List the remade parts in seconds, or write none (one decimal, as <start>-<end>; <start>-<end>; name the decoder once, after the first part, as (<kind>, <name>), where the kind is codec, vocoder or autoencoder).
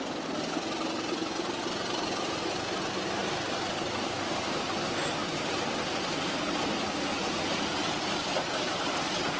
none